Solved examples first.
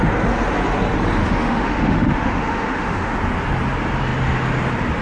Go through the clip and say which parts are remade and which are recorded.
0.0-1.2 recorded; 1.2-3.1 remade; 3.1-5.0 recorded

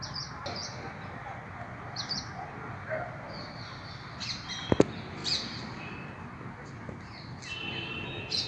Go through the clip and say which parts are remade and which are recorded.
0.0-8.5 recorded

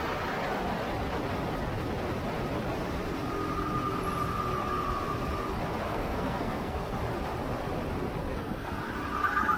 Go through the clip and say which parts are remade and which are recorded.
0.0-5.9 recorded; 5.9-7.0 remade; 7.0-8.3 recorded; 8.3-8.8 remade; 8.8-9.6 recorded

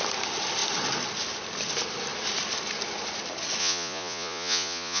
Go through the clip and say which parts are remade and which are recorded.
0.0-3.6 recorded; 3.6-5.0 remade

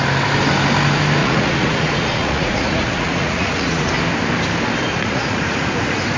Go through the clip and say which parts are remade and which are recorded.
0.0-1.2 recorded; 1.2-3.9 remade; 3.9-4.9 recorded; 4.9-5.8 remade; 5.8-6.2 recorded

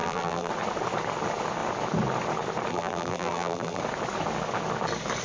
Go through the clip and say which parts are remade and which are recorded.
0.0-0.5 remade; 0.5-2.7 recorded; 2.7-3.8 remade; 3.8-5.2 recorded